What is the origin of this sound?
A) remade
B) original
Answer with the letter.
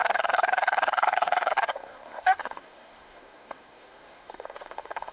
A